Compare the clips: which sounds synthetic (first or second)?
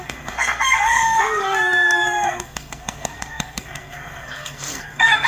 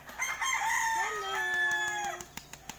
first